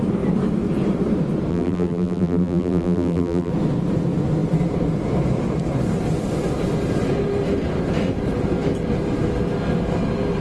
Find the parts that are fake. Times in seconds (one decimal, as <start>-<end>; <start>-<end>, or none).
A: 1.5-3.5